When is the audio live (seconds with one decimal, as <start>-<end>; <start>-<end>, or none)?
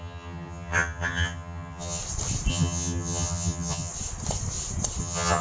2.0-2.5; 3.9-5.0